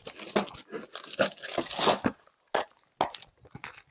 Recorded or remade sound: recorded